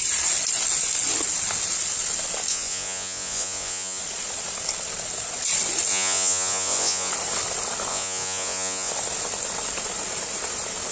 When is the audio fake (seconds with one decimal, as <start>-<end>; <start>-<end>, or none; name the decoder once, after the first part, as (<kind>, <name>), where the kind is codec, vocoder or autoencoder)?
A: 2.5-4.0 (vocoder, Vocos); 5.9-7.1; 7.9-8.9